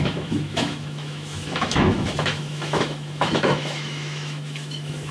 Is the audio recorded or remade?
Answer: remade